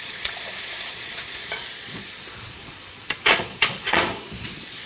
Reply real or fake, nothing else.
fake